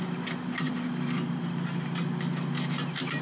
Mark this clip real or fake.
real